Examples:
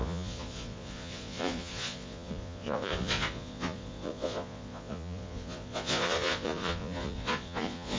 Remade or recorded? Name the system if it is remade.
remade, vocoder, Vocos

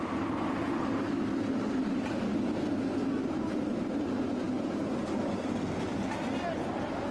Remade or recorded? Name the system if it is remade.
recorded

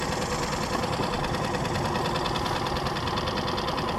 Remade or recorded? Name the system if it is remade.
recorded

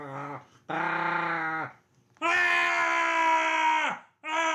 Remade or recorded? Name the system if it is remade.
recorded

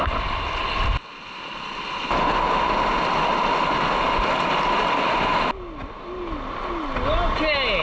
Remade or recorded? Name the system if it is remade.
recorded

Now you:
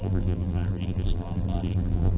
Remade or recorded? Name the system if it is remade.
remade, vocoder, BigVGAN v2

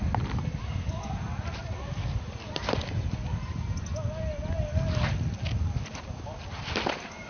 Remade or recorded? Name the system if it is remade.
recorded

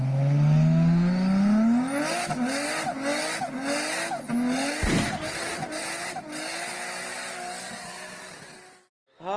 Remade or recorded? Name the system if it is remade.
recorded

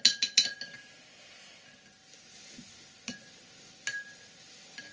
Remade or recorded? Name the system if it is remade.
recorded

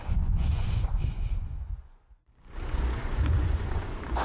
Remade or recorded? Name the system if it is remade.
remade, vocoder, Vocos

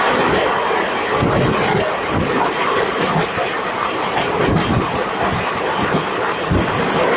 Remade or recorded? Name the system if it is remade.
recorded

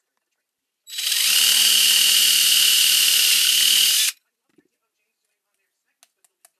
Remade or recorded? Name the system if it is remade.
recorded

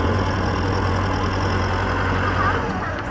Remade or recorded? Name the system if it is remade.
remade, vocoder, Vocos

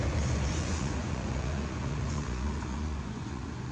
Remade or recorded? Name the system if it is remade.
remade, vocoder, Vocos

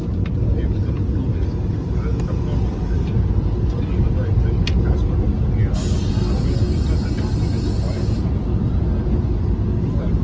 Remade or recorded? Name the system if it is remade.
recorded